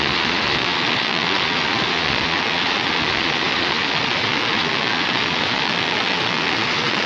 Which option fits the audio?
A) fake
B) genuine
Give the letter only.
A